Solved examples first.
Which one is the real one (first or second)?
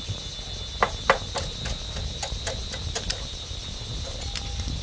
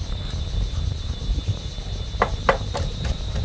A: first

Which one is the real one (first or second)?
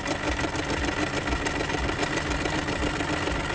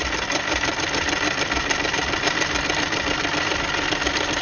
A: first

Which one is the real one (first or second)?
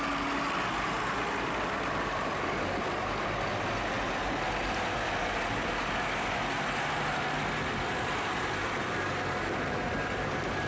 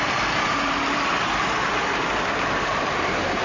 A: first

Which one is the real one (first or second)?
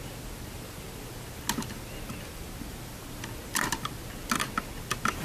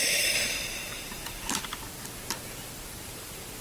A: first